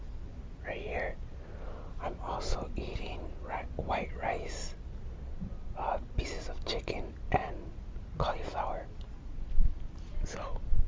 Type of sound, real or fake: real